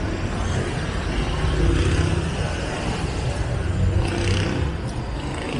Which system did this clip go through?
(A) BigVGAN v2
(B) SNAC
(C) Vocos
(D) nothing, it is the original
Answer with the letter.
D